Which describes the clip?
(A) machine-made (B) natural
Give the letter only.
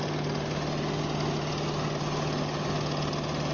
B